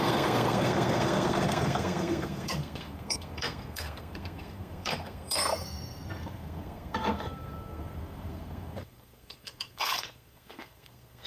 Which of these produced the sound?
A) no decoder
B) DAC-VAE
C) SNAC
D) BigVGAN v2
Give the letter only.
C